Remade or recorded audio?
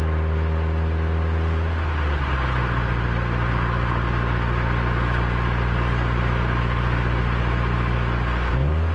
recorded